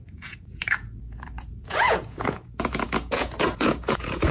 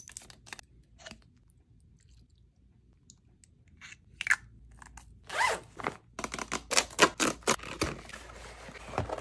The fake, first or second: first